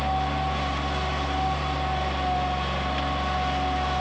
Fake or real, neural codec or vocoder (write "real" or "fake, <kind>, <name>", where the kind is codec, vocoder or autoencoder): real